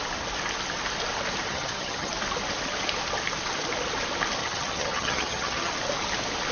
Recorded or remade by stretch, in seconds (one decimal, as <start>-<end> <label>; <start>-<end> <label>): 0.0-1.5 recorded; 1.5-2.1 remade; 2.1-4.4 recorded; 4.4-5.7 remade; 5.7-6.5 recorded